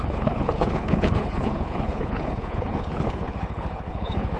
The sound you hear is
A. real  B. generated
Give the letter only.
B